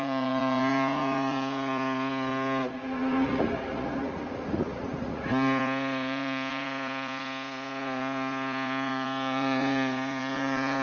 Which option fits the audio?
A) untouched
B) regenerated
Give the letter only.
B